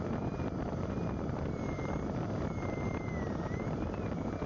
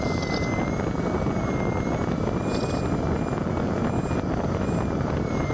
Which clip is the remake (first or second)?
first